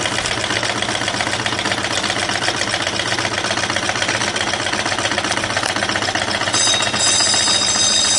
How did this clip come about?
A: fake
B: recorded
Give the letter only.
B